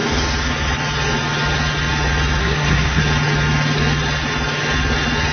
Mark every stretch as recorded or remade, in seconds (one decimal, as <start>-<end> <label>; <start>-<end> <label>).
0.0-2.4 recorded; 2.4-3.0 remade; 3.0-5.3 recorded